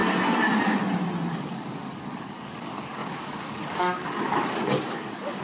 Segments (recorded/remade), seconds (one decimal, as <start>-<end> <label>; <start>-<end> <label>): 0.0-1.3 recorded; 1.3-5.4 remade